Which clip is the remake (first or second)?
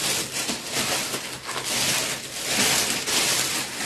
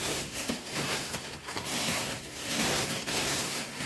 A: second